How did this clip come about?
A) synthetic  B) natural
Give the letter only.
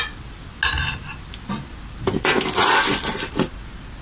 B